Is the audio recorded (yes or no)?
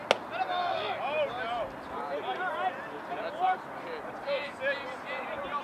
yes